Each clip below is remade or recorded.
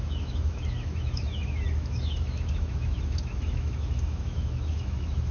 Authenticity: remade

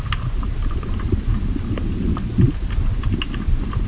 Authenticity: recorded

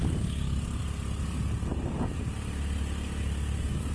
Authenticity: recorded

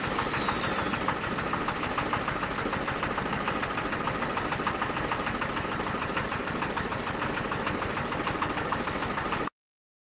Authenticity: recorded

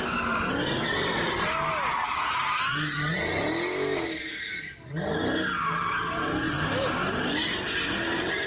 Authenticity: recorded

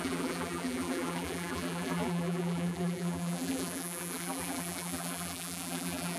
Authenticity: remade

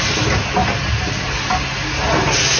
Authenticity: recorded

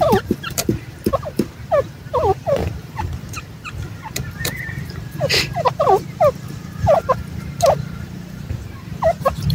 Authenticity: remade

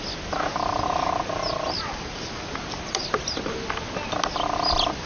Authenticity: recorded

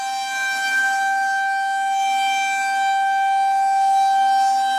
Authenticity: recorded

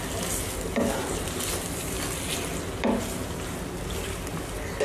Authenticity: recorded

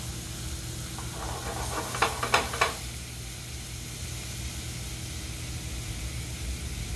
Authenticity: recorded